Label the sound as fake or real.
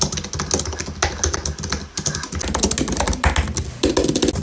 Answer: real